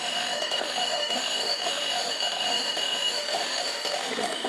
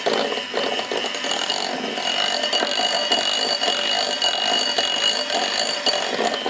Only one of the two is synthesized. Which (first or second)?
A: first